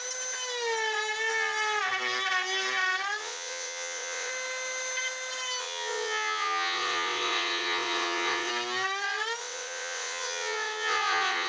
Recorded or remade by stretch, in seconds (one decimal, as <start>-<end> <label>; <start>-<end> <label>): 0.0-3.2 recorded; 3.2-4.3 remade; 4.3-5.6 recorded; 5.6-8.5 remade; 8.5-9.4 recorded; 9.4-11.5 remade